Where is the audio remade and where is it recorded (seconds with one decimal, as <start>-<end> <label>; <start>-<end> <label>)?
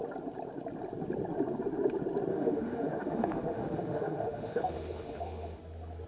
0.0-2.3 recorded; 2.3-5.6 remade; 5.6-6.1 recorded